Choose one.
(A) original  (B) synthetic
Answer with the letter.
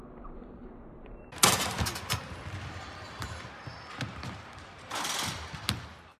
A